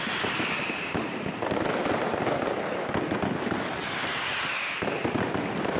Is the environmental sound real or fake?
real